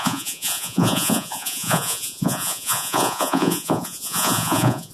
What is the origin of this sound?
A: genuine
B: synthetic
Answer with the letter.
B